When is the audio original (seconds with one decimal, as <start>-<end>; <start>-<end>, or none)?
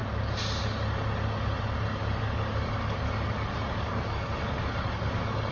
0.0-1.9